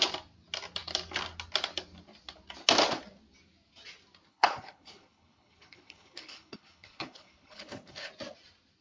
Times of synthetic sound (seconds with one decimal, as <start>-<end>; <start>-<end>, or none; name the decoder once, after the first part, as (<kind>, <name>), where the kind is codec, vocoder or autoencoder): 4.3-8.1 (codec, HILCodec)